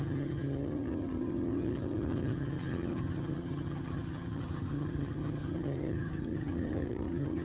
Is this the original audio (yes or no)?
no